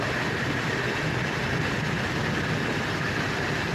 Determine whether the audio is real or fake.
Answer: real